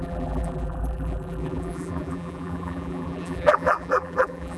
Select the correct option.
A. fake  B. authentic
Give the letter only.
A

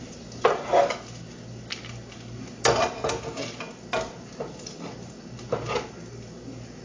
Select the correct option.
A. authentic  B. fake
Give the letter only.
A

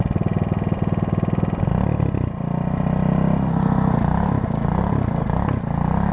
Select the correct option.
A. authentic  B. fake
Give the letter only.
A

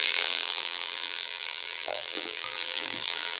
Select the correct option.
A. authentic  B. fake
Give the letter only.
B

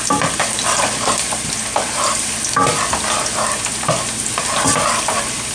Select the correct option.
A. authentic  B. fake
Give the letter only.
B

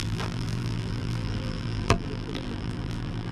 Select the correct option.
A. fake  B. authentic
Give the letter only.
A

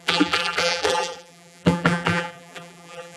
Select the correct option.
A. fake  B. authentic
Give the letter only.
A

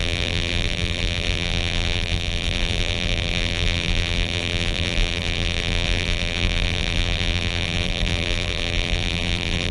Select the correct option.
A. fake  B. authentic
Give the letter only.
A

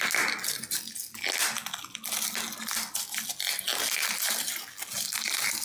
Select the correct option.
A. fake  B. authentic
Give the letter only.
B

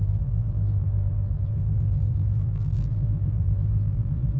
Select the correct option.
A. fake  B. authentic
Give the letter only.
A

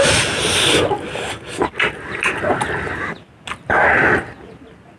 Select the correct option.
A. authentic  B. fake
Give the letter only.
A